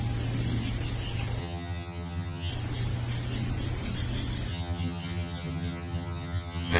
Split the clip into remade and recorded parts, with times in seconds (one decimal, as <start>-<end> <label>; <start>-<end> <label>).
0.0-1.4 recorded; 1.4-2.5 remade; 2.5-4.5 recorded; 4.5-6.8 remade